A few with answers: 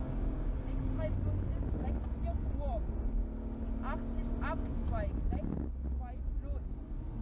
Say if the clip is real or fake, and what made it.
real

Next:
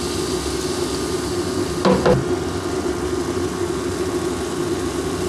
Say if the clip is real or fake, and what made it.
real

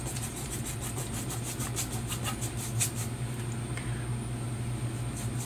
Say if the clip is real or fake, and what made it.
real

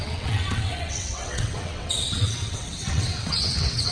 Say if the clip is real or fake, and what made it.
fake, vocoder, WaveNeXt